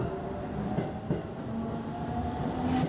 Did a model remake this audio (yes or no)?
no